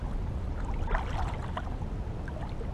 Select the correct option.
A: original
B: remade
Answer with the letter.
A